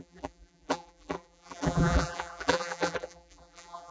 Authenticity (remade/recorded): remade